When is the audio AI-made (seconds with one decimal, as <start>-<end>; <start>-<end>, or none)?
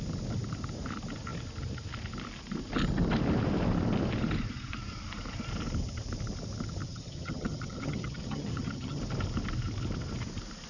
6.8-9.0